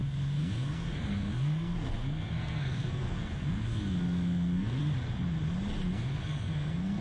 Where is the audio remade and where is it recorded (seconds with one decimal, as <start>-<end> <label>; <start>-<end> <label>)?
0.0-4.8 remade; 4.8-5.9 recorded; 5.9-7.0 remade

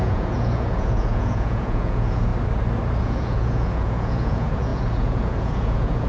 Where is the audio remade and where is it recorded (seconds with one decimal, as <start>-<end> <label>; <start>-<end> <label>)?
0.0-2.3 remade; 2.3-3.0 recorded; 3.0-6.1 remade

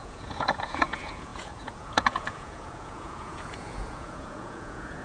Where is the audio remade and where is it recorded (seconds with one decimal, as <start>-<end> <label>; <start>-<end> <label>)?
0.0-5.0 remade